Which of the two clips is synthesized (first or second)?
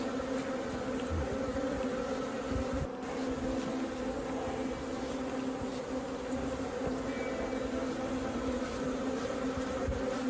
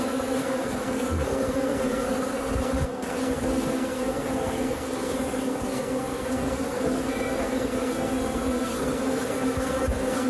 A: second